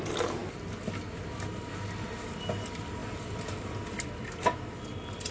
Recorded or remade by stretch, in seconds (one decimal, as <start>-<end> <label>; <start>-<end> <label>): 0.0-5.3 recorded